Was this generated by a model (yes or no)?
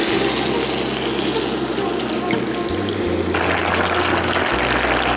no